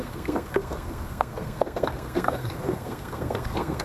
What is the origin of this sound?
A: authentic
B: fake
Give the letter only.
B